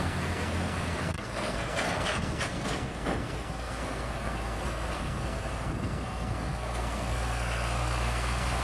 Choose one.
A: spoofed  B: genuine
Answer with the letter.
A